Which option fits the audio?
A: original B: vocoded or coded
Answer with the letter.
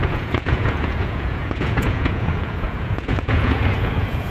B